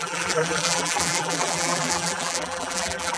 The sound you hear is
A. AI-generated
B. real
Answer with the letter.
A